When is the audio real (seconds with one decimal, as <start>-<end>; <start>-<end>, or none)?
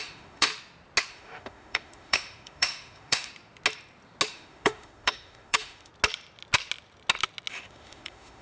0.5-1.1; 3.3-4.3; 5.9-7.5